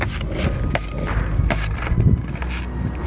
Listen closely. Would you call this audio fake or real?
real